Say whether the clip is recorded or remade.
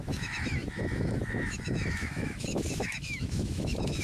remade